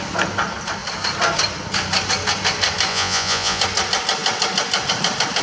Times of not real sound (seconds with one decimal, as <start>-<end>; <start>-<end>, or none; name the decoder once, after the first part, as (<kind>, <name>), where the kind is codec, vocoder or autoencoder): 2.9-3.6 (vocoder, Vocos)